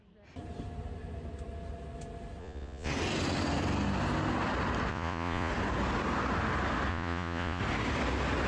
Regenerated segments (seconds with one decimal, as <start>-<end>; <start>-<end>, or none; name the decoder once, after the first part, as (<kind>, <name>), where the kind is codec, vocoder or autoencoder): 2.4-2.9 (vocoder, Vocos); 4.9-5.5; 6.9-7.6